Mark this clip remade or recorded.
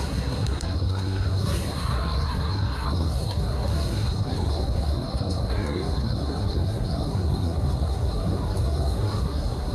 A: remade